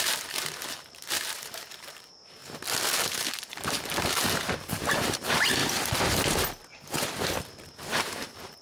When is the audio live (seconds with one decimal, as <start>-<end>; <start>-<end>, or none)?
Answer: 2.4-3.0; 5.6-7.9

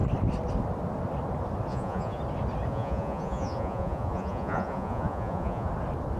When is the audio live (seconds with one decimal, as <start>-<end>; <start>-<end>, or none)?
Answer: 0.0-1.7; 2.2-2.7; 5.7-6.2

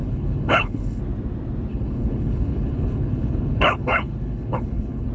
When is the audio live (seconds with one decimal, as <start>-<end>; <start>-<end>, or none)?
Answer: 1.0-1.7

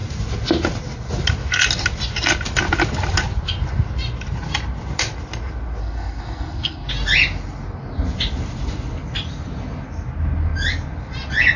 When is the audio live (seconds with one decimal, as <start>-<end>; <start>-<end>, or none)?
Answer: 0.0-5.8; 6.9-11.6

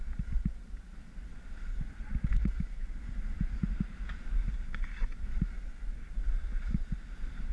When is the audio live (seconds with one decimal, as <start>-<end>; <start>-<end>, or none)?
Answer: 0.0-7.5